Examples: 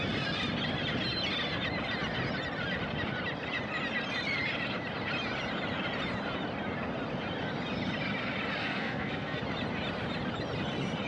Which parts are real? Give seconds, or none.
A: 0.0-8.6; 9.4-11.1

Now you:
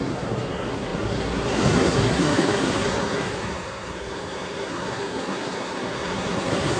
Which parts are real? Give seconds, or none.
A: none

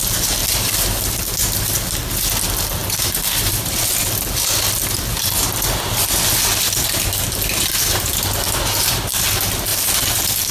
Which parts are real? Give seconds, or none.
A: 0.0-10.5